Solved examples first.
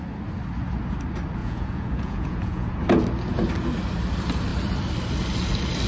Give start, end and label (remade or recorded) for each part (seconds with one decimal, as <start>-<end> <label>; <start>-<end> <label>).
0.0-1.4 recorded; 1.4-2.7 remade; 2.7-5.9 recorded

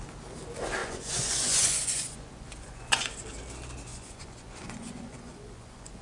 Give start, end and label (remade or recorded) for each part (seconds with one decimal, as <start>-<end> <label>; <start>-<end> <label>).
0.0-0.8 recorded; 0.8-3.2 remade; 3.2-3.9 recorded; 3.9-6.0 remade

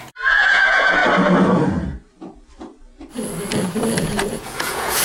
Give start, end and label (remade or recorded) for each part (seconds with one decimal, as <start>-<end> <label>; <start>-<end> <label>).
0.0-1.0 remade; 1.0-4.0 recorded; 4.0-5.0 remade

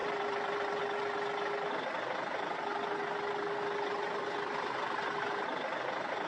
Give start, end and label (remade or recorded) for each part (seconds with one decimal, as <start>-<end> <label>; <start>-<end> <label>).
0.0-0.8 remade; 0.8-6.3 recorded